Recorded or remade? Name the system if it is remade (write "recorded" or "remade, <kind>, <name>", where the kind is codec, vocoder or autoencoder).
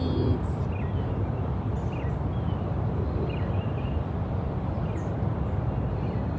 recorded